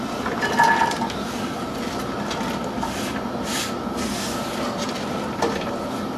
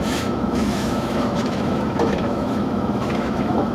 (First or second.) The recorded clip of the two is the first